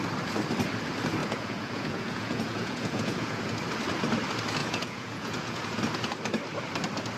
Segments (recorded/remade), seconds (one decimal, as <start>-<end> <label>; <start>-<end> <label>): 0.0-1.2 recorded; 1.2-3.4 remade; 3.4-4.6 recorded; 4.6-5.8 remade; 5.8-7.2 recorded